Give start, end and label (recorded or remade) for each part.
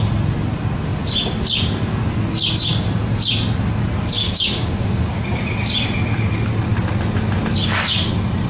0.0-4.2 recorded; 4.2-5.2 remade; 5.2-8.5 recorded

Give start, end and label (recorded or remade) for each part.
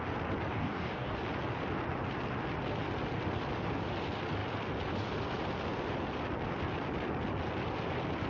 0.0-0.5 recorded; 0.5-1.2 remade; 1.2-8.3 recorded